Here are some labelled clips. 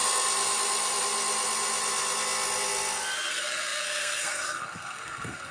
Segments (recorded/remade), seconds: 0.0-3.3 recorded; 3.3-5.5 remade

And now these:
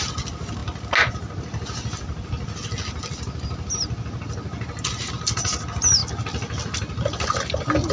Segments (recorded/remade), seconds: 0.0-7.9 recorded

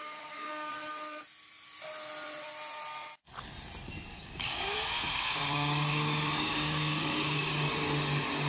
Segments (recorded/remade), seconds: 0.0-0.7 remade; 0.7-4.1 recorded; 4.1-7.7 remade; 7.7-8.5 recorded

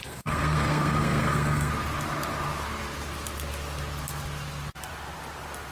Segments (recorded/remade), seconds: 0.0-1.7 remade; 1.7-5.7 recorded

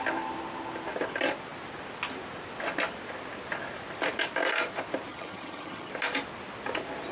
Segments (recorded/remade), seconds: 0.0-5.1 recorded; 5.1-5.9 remade; 5.9-7.1 recorded

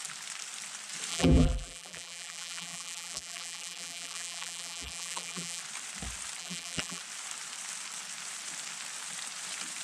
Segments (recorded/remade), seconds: 0.0-1.1 recorded; 1.1-5.6 remade; 5.6-6.4 recorded; 6.4-7.0 remade; 7.0-9.8 recorded